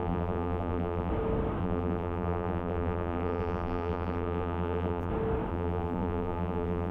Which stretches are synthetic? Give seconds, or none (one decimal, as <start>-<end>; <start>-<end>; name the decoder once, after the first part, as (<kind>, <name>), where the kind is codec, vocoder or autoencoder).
0.0-1.1 (vocoder, BigVGAN v2); 1.6-5.1; 5.5-6.9